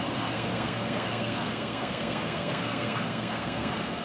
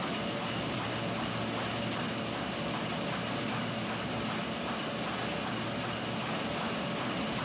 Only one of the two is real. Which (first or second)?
second